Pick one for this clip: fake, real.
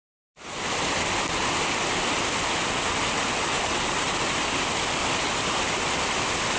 real